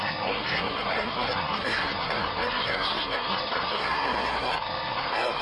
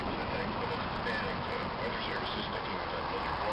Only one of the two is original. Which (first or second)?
second